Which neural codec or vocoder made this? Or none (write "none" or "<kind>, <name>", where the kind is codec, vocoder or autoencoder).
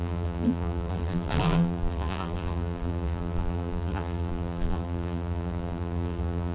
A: vocoder, BigVGAN v2